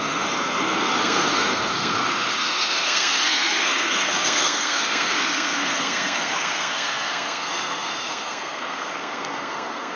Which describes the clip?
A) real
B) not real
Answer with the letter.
B